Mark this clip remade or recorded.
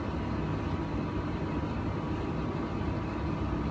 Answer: recorded